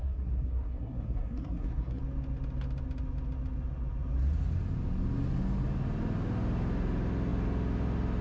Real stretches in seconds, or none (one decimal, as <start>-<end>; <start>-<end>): 2.0-8.2